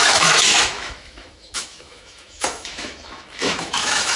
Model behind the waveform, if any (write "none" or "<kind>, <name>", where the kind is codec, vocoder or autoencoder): autoencoder, DAC-VAE